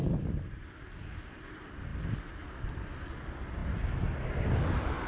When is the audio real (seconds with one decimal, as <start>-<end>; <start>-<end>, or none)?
0.0-1.9; 3.1-5.1